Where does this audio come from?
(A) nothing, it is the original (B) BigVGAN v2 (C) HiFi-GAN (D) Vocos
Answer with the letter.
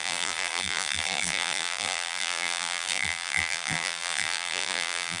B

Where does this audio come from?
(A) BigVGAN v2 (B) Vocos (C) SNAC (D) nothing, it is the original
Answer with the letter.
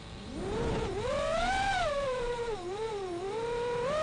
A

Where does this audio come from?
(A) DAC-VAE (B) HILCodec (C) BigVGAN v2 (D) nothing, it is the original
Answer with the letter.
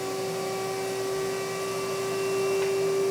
D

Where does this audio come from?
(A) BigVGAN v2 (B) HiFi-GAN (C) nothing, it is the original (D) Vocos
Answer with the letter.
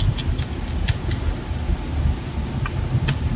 C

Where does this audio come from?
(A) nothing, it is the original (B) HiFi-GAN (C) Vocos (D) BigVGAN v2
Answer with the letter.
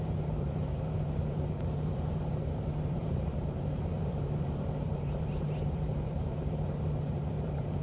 D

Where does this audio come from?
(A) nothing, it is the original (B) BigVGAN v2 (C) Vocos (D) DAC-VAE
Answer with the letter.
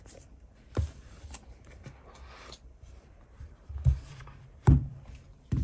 B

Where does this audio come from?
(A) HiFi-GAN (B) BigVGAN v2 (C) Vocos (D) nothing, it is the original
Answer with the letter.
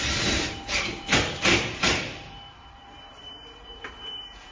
B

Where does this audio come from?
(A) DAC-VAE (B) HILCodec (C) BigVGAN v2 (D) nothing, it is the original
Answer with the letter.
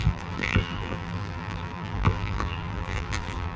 C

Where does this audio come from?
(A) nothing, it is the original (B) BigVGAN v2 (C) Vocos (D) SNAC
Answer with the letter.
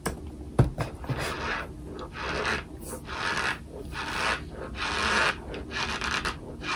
A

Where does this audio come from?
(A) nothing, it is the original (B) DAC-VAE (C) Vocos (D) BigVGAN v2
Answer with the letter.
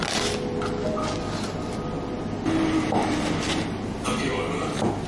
A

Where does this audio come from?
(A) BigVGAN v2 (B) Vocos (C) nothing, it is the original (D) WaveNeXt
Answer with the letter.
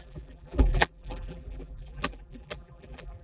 A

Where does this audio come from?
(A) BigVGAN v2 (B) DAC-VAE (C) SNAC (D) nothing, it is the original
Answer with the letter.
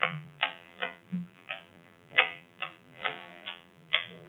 A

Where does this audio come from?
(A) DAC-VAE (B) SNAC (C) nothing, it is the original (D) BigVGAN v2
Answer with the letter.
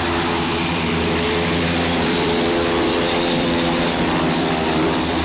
D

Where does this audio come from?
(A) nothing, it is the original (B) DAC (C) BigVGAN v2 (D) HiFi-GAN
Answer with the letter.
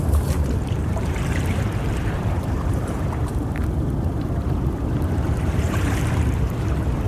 C